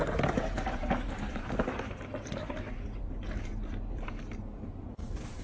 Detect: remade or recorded remade